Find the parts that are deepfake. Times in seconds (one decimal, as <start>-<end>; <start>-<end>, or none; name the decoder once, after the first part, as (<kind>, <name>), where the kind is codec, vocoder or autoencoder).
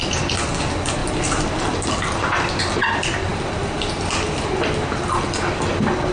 1.0-2.6 (vocoder, BigVGAN v2)